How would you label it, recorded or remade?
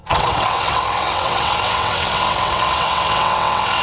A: remade